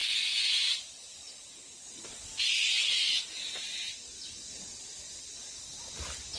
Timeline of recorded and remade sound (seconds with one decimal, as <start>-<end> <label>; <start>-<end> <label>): 0.0-6.4 recorded